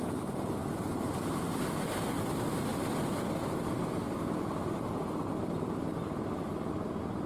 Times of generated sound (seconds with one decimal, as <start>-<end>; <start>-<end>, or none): none